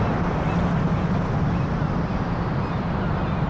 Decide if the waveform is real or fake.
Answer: real